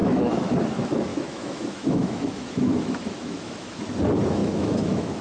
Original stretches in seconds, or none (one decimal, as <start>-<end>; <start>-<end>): 0.5-1.1; 3.8-4.4